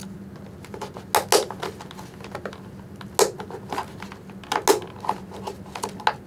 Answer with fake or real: real